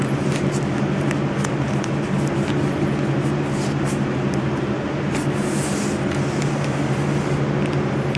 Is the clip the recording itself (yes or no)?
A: yes